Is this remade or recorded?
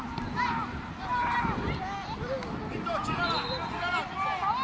recorded